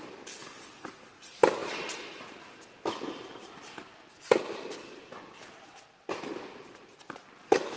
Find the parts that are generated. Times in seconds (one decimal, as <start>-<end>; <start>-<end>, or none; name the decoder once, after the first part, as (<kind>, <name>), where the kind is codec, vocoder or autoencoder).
none